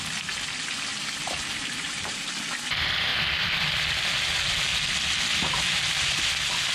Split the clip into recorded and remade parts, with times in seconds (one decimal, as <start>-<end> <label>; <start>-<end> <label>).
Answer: 0.0-0.9 recorded; 0.9-2.3 remade; 2.3-5.3 recorded; 5.3-6.3 remade; 6.3-6.7 recorded